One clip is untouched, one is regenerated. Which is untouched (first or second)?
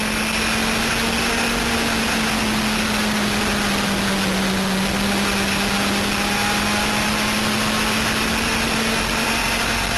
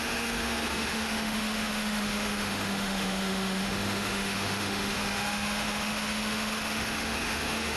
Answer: first